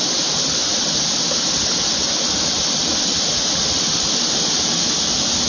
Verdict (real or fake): real